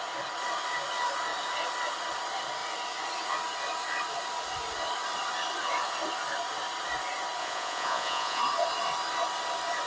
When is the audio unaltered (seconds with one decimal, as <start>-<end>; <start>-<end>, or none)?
0.0-7.4; 8.4-9.9